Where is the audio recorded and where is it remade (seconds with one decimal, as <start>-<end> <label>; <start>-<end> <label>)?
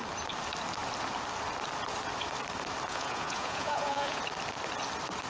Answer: 0.0-2.9 recorded; 2.9-4.2 remade; 4.2-5.3 recorded